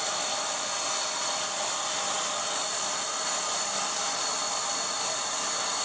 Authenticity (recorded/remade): recorded